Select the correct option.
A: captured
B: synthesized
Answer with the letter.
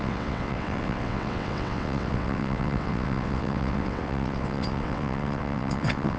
B